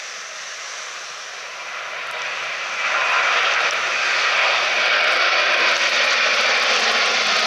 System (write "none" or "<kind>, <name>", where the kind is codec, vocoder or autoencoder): none